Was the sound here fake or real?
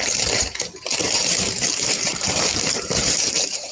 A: fake